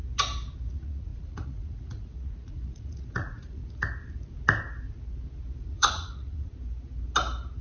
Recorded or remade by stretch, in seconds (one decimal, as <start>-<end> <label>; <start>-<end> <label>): 0.0-0.7 recorded; 0.7-3.6 remade; 3.6-5.6 recorded; 5.6-6.5 remade; 6.5-7.6 recorded